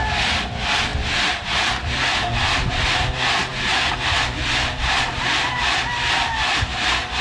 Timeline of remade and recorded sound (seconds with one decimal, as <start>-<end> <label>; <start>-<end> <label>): 0.0-7.2 recorded